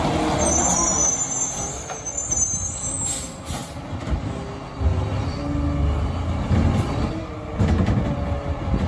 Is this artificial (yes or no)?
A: no